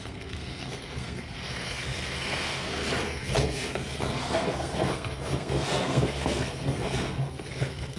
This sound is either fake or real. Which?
fake